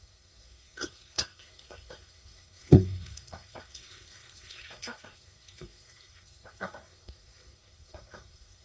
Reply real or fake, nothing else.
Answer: fake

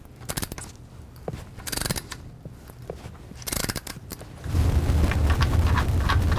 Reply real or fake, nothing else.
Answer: real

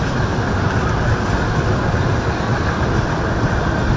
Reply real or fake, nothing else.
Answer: real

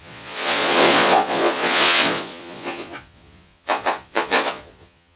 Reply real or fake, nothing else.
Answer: fake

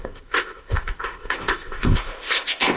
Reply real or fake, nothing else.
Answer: fake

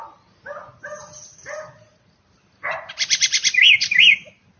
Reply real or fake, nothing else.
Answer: real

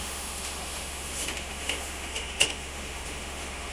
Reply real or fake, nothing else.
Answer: fake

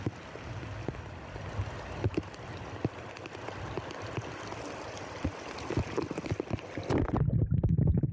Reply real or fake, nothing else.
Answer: real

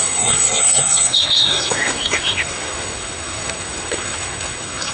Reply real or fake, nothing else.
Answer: fake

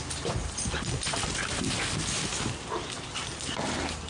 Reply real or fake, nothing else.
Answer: real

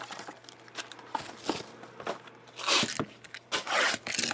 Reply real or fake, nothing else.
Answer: real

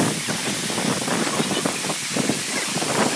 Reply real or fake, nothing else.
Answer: real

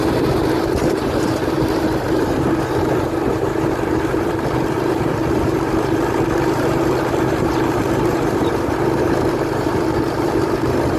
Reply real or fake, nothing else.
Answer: fake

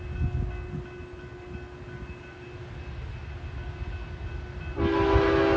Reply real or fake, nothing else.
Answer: real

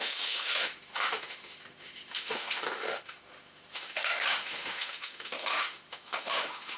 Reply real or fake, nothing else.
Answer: fake